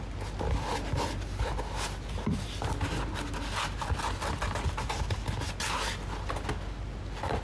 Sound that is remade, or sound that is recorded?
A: recorded